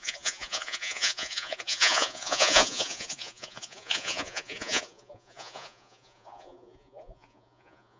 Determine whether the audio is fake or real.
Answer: fake